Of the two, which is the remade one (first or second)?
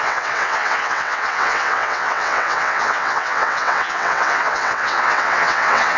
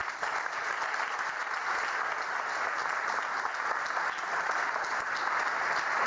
first